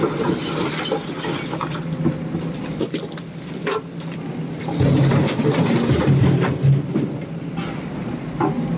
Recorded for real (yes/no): yes